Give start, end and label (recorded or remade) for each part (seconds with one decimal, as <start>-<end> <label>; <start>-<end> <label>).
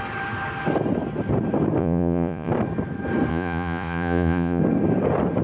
0.0-1.8 recorded; 1.8-2.5 remade; 2.5-3.3 recorded; 3.3-4.6 remade; 4.6-5.4 recorded